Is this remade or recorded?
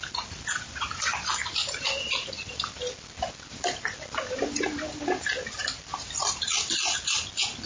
recorded